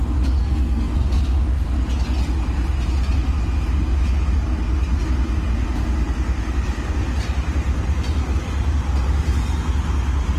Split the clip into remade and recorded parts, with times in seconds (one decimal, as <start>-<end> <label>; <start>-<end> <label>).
0.0-0.4 recorded; 0.4-1.2 remade; 1.2-10.4 recorded